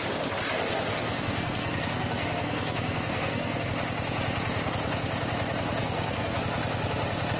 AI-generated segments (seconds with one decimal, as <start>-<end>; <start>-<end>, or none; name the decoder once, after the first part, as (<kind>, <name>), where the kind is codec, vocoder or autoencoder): 0.9-3.7 (codec, SNAC); 5.8-6.4